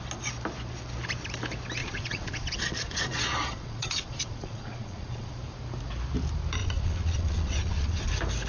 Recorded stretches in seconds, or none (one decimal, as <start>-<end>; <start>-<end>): 0.0-1.8; 5.4-6.6; 8.1-8.5